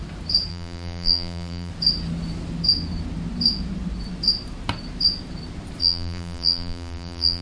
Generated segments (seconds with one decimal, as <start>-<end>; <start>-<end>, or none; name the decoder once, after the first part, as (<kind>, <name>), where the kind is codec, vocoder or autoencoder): 0.5-1.7 (vocoder, BigVGAN v2); 5.8-7.4